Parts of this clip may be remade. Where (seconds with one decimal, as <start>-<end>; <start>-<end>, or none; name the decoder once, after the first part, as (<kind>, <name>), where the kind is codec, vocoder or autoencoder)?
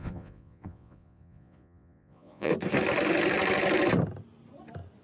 0.0-2.5 (vocoder, Vocos)